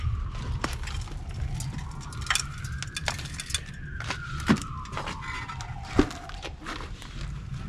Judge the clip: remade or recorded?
recorded